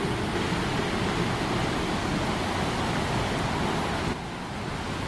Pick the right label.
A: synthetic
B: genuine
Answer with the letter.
B